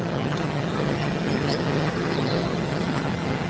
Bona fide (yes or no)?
no